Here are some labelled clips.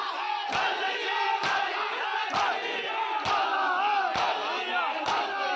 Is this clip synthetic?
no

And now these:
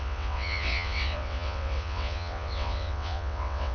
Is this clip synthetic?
yes